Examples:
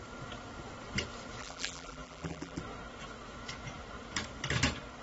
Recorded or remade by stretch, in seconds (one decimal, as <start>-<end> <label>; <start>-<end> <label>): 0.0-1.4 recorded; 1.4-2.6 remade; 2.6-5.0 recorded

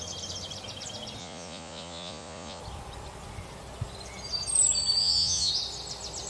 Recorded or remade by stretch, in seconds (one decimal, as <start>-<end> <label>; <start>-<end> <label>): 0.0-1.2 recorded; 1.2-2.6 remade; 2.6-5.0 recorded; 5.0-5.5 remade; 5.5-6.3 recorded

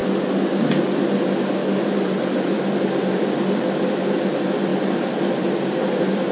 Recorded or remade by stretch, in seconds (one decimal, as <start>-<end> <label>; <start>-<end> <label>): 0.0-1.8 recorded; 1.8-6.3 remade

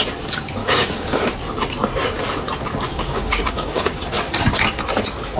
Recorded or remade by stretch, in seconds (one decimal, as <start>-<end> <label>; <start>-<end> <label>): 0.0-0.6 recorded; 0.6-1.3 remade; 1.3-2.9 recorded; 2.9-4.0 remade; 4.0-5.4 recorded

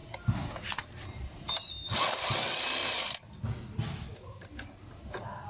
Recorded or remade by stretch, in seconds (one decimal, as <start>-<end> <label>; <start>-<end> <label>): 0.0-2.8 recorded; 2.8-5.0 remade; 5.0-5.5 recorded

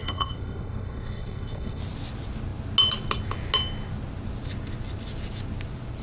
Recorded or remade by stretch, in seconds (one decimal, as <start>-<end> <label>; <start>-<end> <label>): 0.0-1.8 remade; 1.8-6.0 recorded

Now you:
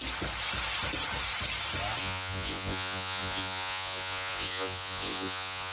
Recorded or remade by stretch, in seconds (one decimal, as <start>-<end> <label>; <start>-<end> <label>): 0.0-2.0 recorded; 2.0-5.7 remade